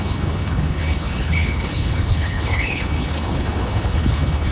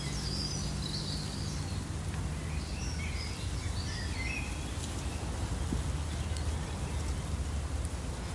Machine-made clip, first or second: first